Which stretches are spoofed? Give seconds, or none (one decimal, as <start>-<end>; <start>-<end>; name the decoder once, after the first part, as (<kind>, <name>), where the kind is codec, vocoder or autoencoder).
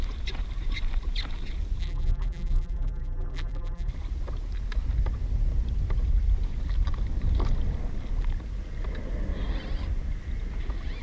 1.8-3.9 (vocoder, BigVGAN v2)